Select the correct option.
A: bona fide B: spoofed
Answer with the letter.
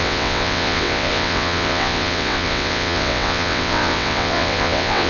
B